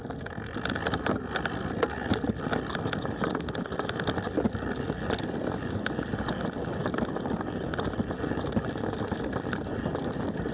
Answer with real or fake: real